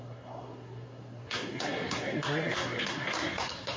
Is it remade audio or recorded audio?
remade